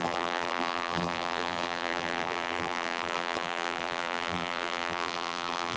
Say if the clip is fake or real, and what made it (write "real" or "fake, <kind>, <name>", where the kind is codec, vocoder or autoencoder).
fake, vocoder, BigVGAN v2